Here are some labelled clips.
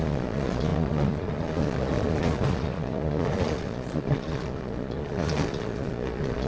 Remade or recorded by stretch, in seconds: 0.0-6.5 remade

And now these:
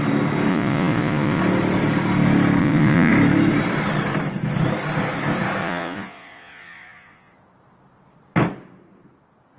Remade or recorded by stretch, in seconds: 0.0-0.5 recorded; 0.5-1.4 remade; 1.4-2.6 recorded; 2.6-3.1 remade; 3.1-5.6 recorded; 5.6-7.3 remade; 7.3-9.6 recorded

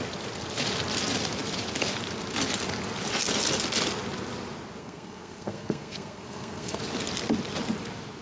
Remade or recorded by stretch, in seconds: 0.0-4.8 recorded; 4.8-6.8 remade; 6.8-8.2 recorded

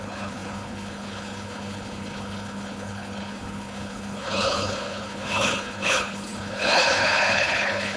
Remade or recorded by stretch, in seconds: 0.0-8.0 remade

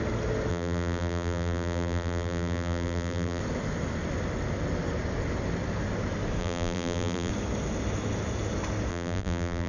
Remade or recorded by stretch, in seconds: 0.0-0.5 recorded; 0.5-3.4 remade; 3.4-6.4 recorded; 6.4-7.3 remade; 7.3-8.9 recorded; 8.9-9.7 remade

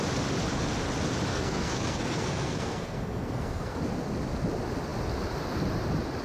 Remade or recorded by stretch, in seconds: 0.0-1.3 recorded; 1.3-3.8 remade; 3.8-6.2 recorded

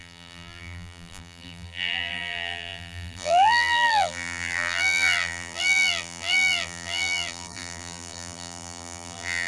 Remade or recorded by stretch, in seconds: 0.0-9.5 remade

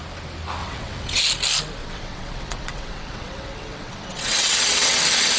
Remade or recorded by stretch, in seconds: 0.0-0.6 recorded; 0.6-1.2 remade; 1.2-1.8 recorded; 1.8-5.0 remade; 5.0-5.4 recorded